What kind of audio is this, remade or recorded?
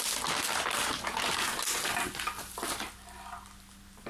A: recorded